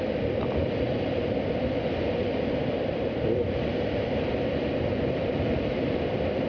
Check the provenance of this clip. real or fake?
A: fake